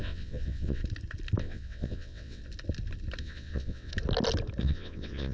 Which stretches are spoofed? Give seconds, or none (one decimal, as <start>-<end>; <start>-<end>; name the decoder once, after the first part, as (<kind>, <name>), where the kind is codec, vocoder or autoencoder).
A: 0.0-0.8 (vocoder, WaveNeXt); 1.4-2.4; 3.2-3.9; 4.6-5.3